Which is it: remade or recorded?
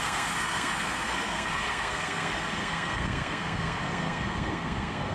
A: remade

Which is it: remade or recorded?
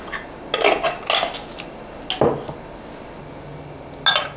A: recorded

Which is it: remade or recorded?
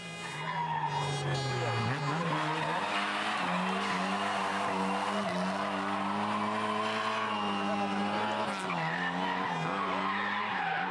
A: recorded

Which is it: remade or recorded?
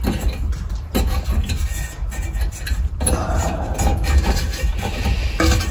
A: recorded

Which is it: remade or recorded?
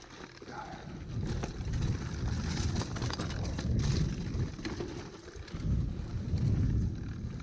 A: recorded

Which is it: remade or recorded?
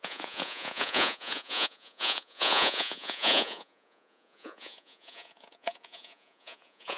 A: remade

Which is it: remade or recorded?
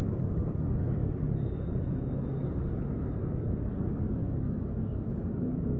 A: remade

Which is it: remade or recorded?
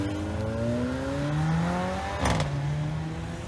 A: recorded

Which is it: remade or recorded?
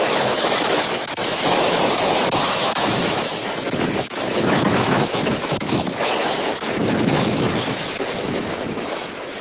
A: remade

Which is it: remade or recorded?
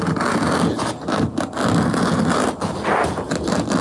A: recorded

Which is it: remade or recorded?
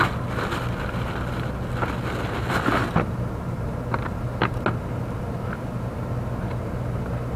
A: recorded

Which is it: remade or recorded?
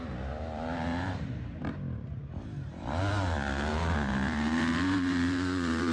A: remade